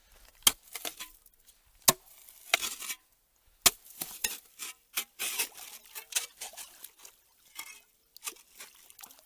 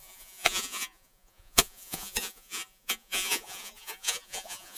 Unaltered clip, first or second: first